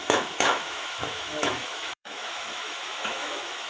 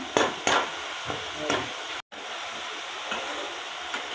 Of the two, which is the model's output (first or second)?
first